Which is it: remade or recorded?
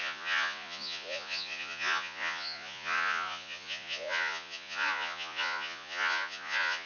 remade